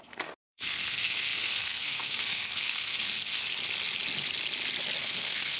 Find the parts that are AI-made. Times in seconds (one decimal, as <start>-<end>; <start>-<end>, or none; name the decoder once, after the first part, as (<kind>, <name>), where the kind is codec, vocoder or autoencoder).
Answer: 0.0-3.4 (codec, SNAC); 5.0-5.6